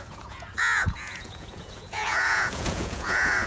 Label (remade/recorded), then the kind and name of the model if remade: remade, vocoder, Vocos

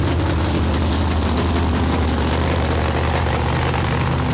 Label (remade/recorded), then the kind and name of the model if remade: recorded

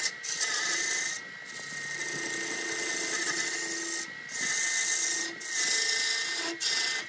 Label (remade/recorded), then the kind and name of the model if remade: recorded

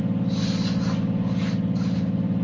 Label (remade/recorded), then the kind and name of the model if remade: recorded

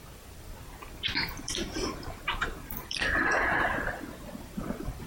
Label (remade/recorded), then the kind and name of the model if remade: remade, vocoder, BigVGAN v2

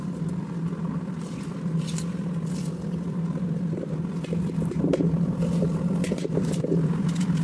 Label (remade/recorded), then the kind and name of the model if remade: remade, vocoder, BigVGAN v2